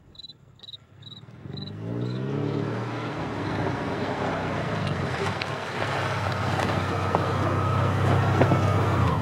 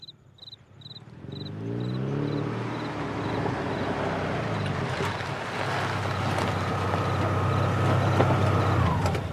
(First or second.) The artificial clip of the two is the first